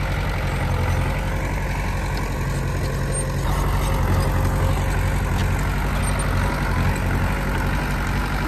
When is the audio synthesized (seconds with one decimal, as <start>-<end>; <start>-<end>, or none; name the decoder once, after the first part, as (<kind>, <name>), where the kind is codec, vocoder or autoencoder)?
none